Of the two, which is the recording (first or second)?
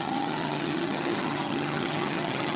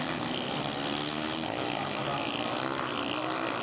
second